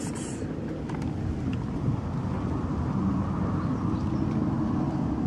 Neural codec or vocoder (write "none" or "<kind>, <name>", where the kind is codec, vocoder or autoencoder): none